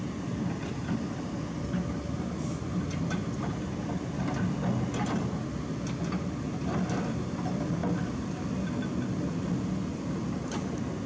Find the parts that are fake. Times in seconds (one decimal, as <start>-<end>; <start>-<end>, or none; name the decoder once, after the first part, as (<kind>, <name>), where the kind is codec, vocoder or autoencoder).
none